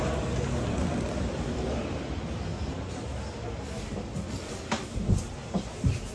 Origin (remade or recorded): recorded